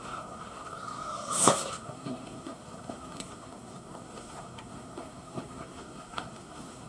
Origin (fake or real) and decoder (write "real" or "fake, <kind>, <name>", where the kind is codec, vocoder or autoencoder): fake, codec, SNAC